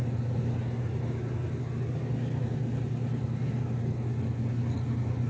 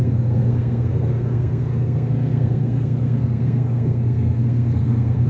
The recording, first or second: first